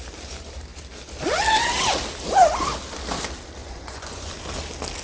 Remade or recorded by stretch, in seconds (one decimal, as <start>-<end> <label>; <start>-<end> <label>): 0.0-3.6 recorded; 3.6-4.3 remade; 4.3-5.0 recorded